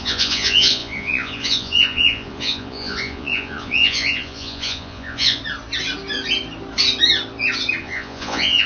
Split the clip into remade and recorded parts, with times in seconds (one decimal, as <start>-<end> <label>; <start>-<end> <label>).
0.0-5.4 remade; 5.4-7.8 recorded; 7.8-8.7 remade